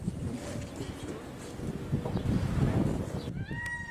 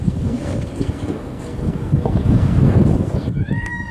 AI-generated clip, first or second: second